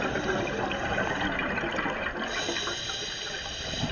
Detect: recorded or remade recorded